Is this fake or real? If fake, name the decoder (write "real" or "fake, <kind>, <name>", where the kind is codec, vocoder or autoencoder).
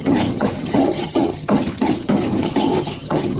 fake, vocoder, HiFi-GAN